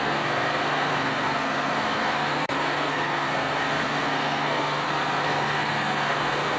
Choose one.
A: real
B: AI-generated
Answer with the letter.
B